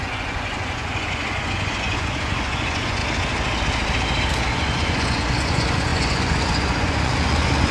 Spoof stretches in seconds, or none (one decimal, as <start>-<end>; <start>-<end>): 0.0-3.0; 4.5-7.7